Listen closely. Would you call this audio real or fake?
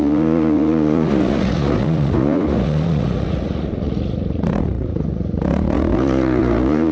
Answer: fake